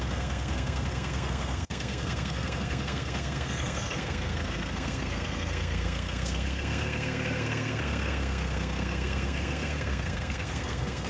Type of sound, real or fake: fake